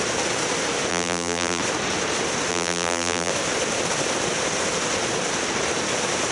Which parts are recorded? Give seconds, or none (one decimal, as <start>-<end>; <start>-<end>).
0.0-0.9; 1.6-2.5; 3.3-6.3